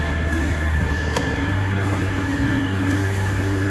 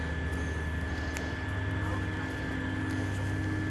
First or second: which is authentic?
second